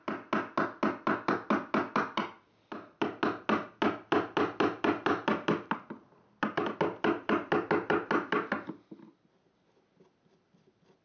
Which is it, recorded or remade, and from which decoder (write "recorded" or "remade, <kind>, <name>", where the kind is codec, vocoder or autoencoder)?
recorded